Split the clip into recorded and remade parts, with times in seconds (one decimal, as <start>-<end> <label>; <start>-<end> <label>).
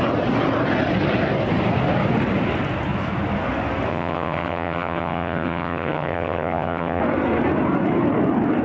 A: 0.0-3.9 recorded; 3.9-7.0 remade; 7.0-8.6 recorded